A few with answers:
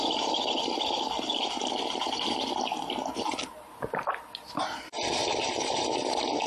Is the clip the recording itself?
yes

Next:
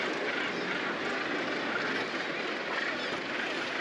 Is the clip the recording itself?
yes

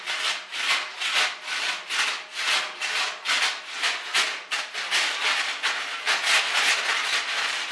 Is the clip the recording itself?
yes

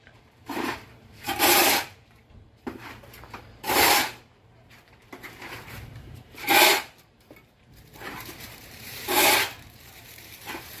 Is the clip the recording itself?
no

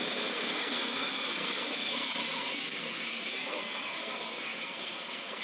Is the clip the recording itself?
no